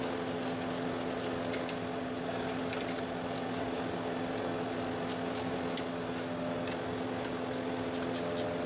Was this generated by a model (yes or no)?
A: no